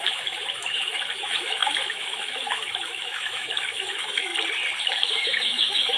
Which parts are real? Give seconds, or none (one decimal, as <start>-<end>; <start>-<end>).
4.3-4.8